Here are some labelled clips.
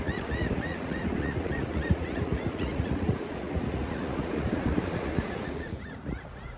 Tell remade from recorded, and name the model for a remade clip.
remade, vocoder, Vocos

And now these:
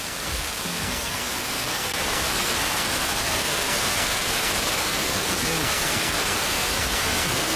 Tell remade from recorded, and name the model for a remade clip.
remade, codec, SNAC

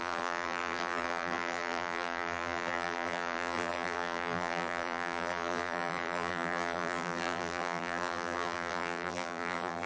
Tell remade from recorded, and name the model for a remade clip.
remade, vocoder, BigVGAN v2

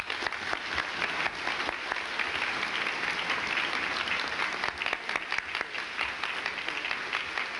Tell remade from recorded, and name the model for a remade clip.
recorded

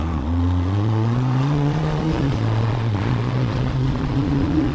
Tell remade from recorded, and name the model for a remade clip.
remade, vocoder, Vocos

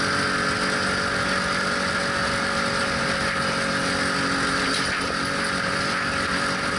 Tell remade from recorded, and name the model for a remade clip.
recorded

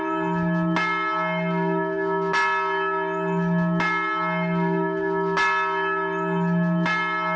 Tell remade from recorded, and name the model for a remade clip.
recorded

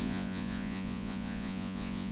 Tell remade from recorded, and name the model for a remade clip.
remade, vocoder, Vocos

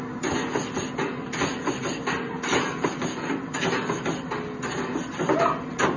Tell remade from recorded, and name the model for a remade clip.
recorded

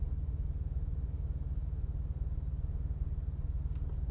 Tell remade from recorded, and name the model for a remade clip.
recorded